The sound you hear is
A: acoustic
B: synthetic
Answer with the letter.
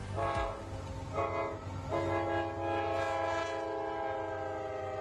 A